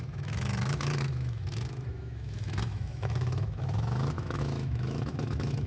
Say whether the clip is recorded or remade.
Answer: remade